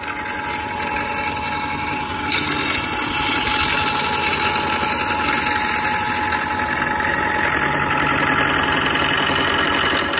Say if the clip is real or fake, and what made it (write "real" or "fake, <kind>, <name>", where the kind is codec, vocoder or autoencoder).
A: real